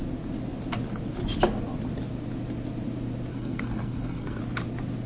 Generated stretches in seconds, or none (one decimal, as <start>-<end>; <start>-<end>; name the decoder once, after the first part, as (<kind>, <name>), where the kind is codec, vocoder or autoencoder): 3.3-4.4 (codec, SNAC)